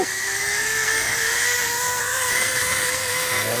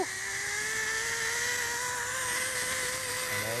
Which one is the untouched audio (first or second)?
second